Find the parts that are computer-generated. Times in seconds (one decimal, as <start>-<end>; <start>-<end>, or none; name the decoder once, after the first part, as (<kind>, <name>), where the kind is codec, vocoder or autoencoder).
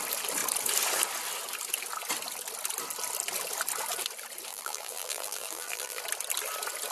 4.5-6.0 (vocoder, BigVGAN v2)